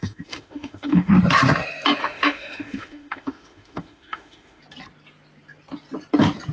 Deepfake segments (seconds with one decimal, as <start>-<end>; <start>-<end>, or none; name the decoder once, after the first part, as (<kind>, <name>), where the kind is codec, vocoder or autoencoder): 0.0-1.1 (autoencoder, DAC-VAE); 2.0-4.6